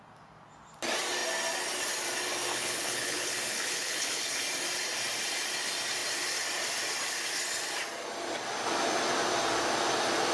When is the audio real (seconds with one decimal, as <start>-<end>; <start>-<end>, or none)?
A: 0.0-2.5; 4.4-10.3